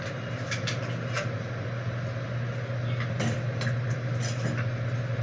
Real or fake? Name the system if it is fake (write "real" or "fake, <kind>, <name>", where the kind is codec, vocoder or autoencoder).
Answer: real